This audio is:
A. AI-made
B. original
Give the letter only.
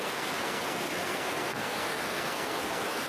A